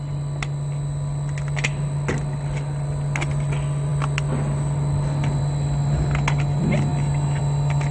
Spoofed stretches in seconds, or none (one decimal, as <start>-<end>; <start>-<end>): none